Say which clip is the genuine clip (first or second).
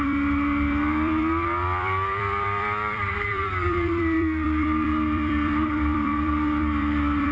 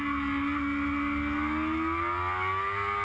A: second